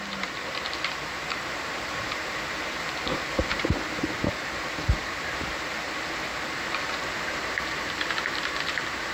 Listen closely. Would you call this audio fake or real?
fake